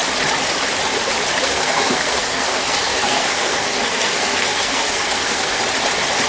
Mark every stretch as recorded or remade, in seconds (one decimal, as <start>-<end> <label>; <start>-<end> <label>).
0.0-1.4 recorded; 1.4-5.6 remade; 5.6-6.3 recorded